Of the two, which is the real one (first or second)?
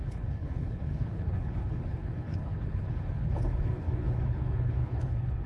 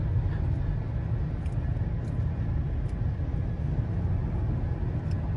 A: second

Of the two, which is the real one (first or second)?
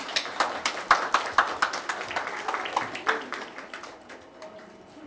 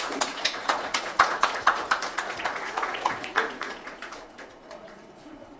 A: first